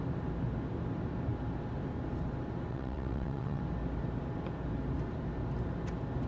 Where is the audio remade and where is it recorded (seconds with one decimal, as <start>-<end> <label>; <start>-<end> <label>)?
0.0-2.7 recorded; 2.7-3.6 remade; 3.6-6.3 recorded